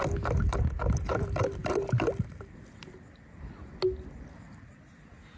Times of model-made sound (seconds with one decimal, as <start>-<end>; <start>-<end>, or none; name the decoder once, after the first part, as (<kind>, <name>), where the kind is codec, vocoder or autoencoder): none